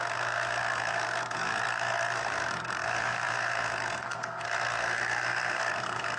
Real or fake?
fake